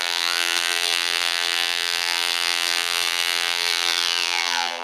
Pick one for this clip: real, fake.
fake